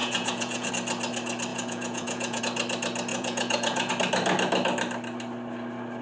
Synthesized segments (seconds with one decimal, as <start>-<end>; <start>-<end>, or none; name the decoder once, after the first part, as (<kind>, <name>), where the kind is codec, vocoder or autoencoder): 0.0-0.7 (vocoder, Vocos); 1.5-2.4; 3.1-3.9